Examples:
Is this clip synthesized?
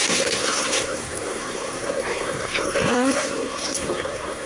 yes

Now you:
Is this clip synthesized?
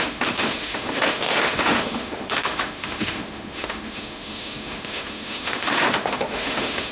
yes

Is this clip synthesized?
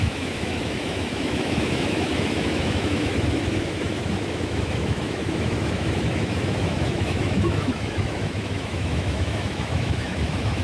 yes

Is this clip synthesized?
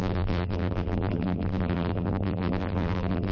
yes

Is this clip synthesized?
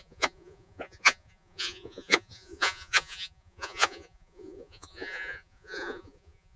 yes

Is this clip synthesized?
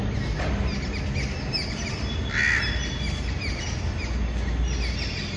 no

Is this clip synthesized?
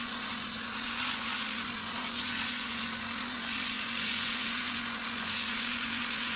yes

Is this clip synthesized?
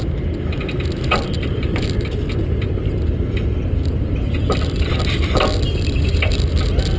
no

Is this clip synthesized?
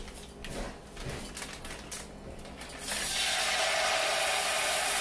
no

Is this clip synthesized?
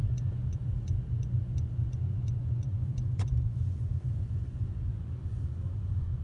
yes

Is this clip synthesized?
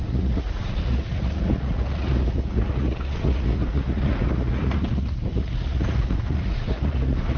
yes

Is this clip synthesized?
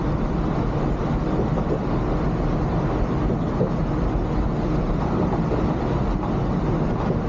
no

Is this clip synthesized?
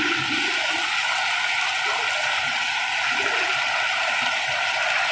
no